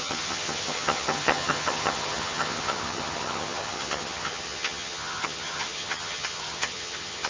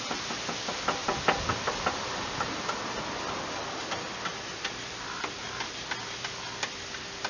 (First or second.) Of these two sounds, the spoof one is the first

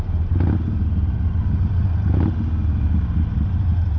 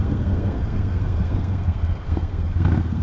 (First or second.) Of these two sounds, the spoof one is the second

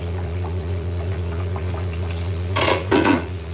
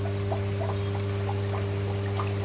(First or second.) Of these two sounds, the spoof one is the first